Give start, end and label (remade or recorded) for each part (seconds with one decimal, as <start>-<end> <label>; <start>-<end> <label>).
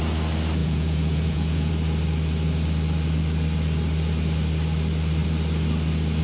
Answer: 0.0-0.6 recorded; 0.6-1.7 remade; 1.7-6.2 recorded